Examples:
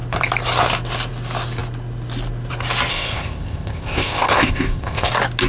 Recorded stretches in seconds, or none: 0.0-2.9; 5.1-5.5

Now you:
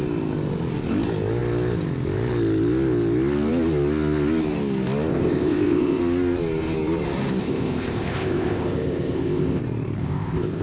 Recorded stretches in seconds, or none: 0.0-5.1; 6.0-7.4; 9.6-10.0

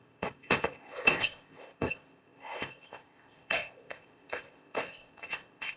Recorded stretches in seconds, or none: none

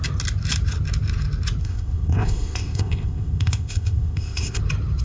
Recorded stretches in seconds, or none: 0.0-1.6; 4.6-5.0

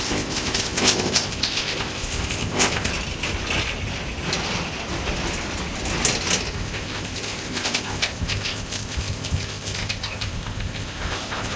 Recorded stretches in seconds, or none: 2.9-6.5

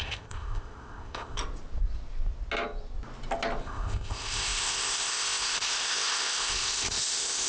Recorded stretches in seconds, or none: 1.4-3.6

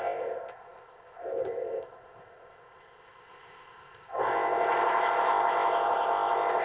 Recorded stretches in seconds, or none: none

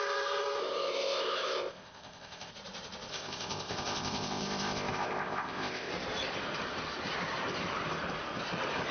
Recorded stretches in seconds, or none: 0.0-0.6; 2.5-3.1; 5.9-8.9